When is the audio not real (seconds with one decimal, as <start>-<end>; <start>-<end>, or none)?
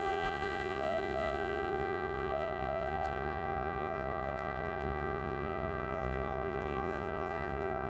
0.0-7.9